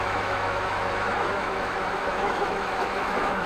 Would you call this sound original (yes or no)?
no